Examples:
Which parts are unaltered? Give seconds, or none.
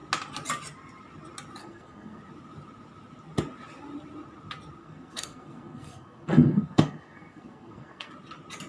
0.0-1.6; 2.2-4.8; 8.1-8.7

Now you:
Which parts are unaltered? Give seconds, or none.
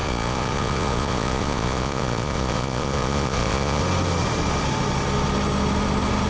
3.8-6.3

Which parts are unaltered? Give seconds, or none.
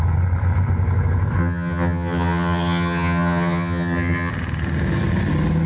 0.0-1.4; 4.3-5.7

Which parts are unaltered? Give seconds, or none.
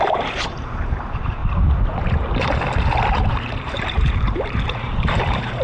1.4-3.3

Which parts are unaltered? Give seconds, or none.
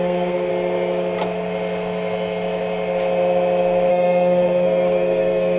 0.5-3.9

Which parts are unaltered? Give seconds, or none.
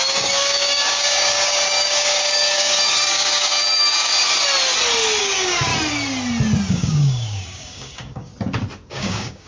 4.1-5.2; 5.7-6.7; 8.3-8.9